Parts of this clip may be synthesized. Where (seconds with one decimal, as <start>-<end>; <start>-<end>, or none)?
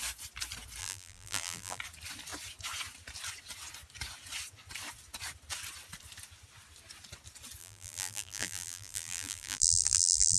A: 0.8-1.8; 7.6-10.4